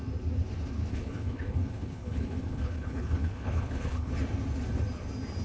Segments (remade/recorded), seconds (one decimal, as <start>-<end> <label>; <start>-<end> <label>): 0.0-0.9 recorded; 0.9-4.1 remade; 4.1-5.4 recorded